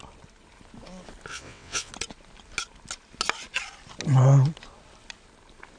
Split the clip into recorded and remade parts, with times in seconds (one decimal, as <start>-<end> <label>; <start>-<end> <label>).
0.0-1.3 recorded; 1.3-1.9 remade; 1.9-5.8 recorded